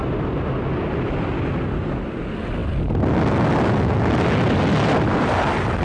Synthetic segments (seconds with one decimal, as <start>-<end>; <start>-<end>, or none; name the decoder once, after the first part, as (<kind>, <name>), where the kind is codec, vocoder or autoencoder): none